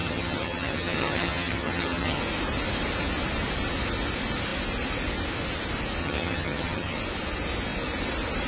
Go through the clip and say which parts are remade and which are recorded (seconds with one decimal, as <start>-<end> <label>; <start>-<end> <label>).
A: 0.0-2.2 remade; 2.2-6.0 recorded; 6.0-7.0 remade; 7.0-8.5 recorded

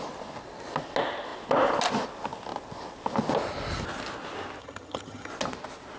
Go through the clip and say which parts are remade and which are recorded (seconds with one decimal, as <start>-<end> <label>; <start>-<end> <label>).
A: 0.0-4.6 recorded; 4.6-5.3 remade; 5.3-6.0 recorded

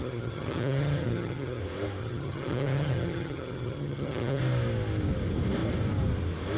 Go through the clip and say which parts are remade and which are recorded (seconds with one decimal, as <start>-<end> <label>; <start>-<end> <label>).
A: 0.0-1.6 remade; 1.6-2.0 recorded; 2.0-4.4 remade; 4.4-6.6 recorded

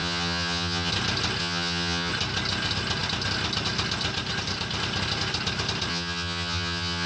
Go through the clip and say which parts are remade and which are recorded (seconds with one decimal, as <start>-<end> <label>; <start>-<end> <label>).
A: 0.0-0.9 remade; 0.9-1.4 recorded; 1.4-2.1 remade; 2.1-5.9 recorded; 5.9-7.1 remade

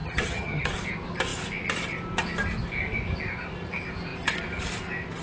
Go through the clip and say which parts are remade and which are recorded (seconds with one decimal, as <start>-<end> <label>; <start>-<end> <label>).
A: 0.0-0.7 remade; 0.7-5.2 recorded

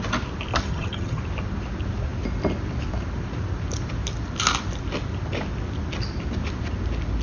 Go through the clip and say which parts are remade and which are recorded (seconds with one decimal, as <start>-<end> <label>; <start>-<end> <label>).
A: 0.0-0.5 recorded; 0.5-1.2 remade; 1.2-7.2 recorded

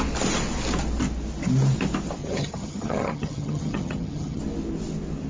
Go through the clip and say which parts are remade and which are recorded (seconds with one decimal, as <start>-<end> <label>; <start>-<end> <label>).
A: 0.0-2.2 recorded; 2.2-4.4 remade; 4.4-5.3 recorded

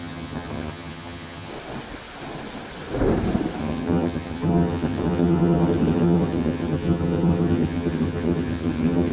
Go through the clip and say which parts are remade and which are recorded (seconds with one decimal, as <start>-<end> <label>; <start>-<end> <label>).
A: 0.0-1.5 remade; 1.5-3.6 recorded; 3.6-9.1 remade